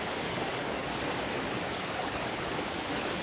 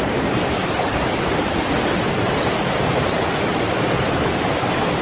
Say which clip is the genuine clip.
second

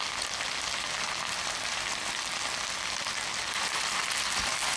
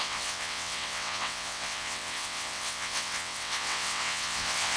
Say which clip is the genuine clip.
first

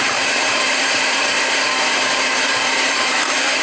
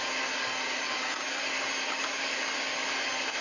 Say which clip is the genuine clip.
second